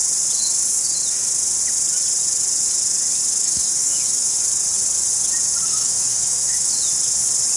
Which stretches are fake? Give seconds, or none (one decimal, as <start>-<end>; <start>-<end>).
3.4-4.4; 5.7-6.7